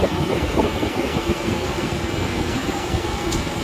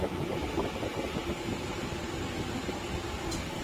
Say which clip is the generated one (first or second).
first